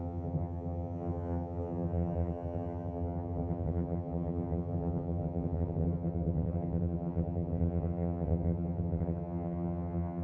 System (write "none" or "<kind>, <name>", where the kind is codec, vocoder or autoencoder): vocoder, HiFi-GAN